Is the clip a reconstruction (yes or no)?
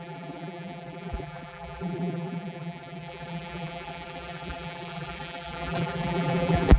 yes